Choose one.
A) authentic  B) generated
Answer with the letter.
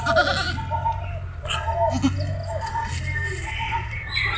A